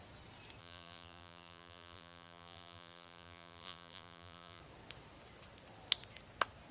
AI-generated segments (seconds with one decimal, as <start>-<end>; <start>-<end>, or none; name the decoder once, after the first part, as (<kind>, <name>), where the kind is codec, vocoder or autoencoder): 0.6-4.6 (vocoder, BigVGAN v2)